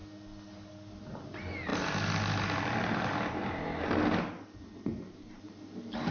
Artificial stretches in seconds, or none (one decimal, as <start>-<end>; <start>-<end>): 4.9-6.1